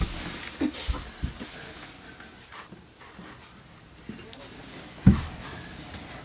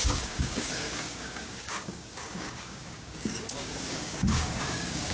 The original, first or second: first